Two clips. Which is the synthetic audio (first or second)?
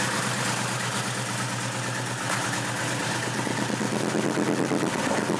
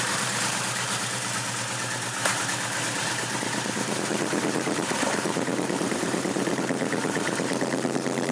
second